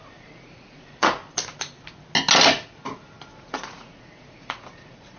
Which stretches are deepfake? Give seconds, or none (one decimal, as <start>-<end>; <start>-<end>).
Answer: 0.0-1.2; 3.3-5.2